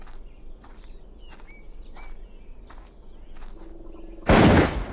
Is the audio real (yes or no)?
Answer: yes